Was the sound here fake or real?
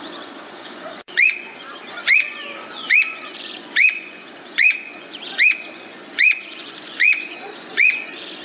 fake